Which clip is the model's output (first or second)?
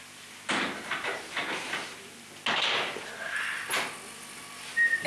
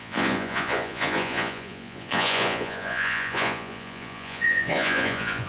second